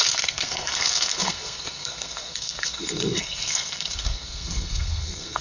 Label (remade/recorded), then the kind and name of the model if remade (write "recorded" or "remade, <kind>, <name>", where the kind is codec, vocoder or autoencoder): remade, codec, SNAC